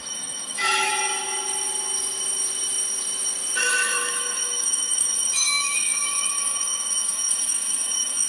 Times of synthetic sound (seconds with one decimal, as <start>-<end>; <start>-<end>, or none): 0.0-0.9; 3.6-8.3